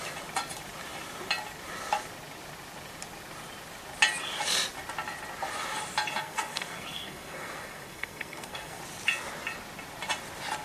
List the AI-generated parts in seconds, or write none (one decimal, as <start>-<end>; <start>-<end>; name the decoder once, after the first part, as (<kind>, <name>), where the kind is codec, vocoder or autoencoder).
6.2-8.8 (codec, SNAC)